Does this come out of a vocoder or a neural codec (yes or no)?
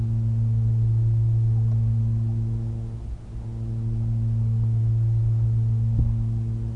no